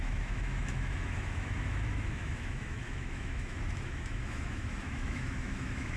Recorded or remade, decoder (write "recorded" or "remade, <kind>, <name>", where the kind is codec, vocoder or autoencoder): remade, autoencoder, DAC-VAE